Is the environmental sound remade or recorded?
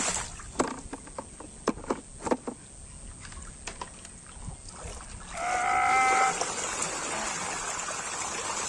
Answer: recorded